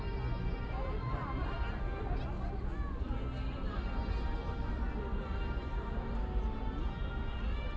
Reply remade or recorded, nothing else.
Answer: recorded